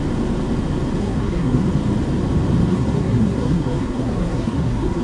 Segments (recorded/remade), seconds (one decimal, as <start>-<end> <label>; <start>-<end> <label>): 0.0-1.0 recorded; 1.0-1.6 remade; 1.6-2.7 recorded; 2.7-5.0 remade